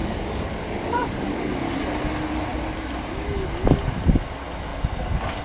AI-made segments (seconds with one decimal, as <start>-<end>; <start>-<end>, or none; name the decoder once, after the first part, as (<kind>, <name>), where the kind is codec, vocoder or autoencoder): 0.0-1.7 (codec, DAC)